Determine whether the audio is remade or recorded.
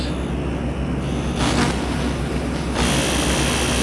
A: recorded